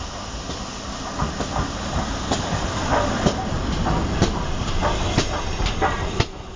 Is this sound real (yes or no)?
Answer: yes